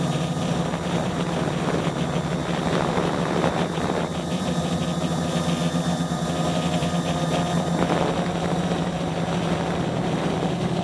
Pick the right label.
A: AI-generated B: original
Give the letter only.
A